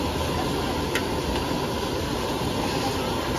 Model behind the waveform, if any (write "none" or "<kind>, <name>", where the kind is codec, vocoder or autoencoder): none